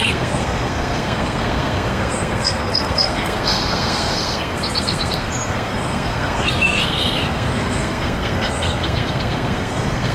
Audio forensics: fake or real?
fake